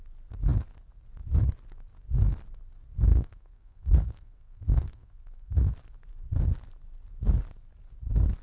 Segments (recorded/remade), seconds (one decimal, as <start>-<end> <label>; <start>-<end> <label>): 0.0-3.1 recorded; 3.1-5.7 remade; 5.7-8.4 recorded